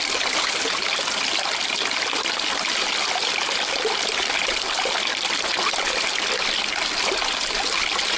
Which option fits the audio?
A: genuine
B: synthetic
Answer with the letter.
A